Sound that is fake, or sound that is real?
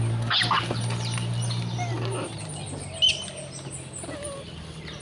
real